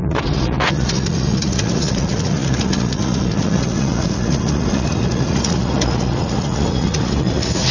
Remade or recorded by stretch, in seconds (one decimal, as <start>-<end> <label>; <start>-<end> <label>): 0.0-7.7 remade